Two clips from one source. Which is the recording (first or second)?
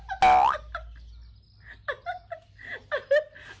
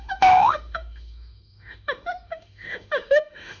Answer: first